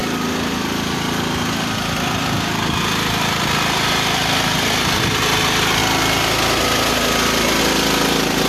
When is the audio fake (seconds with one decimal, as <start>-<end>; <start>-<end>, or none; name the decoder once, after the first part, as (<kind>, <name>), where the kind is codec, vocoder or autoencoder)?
none